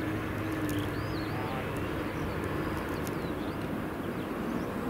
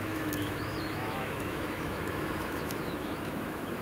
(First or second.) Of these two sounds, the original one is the first